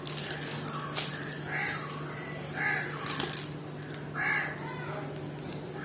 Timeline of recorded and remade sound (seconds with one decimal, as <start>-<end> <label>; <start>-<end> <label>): 0.0-5.8 recorded